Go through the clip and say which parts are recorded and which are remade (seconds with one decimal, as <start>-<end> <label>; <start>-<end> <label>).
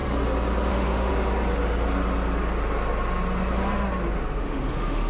0.0-0.7 recorded; 0.7-1.1 remade; 1.1-4.2 recorded; 4.2-5.1 remade